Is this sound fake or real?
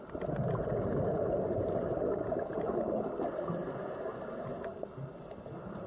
real